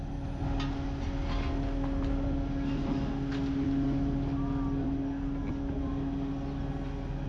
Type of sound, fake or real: real